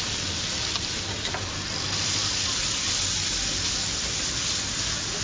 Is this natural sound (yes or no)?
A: yes